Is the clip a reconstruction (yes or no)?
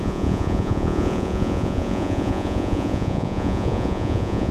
yes